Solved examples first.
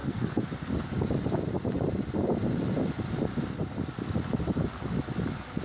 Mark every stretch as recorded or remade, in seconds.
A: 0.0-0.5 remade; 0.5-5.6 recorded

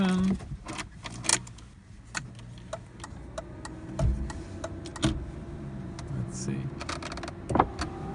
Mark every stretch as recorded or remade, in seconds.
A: 0.0-8.1 recorded